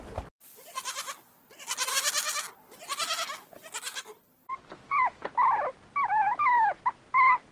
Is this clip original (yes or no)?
yes